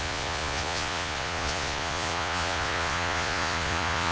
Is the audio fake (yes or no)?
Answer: yes